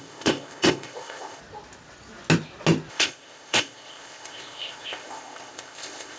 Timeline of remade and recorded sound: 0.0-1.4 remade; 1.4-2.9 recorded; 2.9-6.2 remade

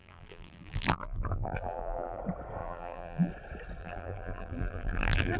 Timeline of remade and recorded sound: 0.0-2.2 remade; 2.2-2.6 recorded; 2.6-3.3 remade; 3.3-3.8 recorded; 3.8-5.4 remade